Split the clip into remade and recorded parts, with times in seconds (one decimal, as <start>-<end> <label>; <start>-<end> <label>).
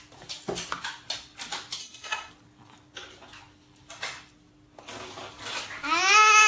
0.0-1.8 recorded; 1.8-2.3 remade; 2.3-6.5 recorded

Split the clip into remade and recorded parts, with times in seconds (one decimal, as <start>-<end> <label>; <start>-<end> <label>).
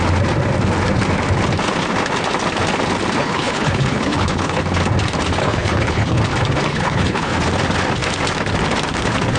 0.0-3.2 recorded; 3.2-4.6 remade; 4.6-5.4 recorded; 5.4-6.2 remade; 6.2-6.7 recorded; 6.7-7.3 remade; 7.3-9.4 recorded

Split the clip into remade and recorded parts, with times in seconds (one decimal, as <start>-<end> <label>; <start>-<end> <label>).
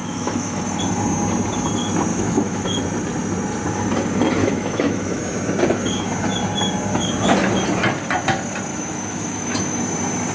0.0-0.6 remade; 0.6-2.1 recorded; 2.1-2.8 remade; 2.8-4.4 recorded; 4.4-5.2 remade; 5.2-8.7 recorded; 8.7-9.8 remade; 9.8-10.3 recorded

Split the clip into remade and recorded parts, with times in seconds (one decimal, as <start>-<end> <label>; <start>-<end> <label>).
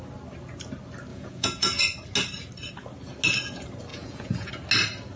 0.0-1.1 recorded; 1.1-1.8 remade; 1.8-3.9 recorded; 3.9-4.5 remade; 4.5-5.2 recorded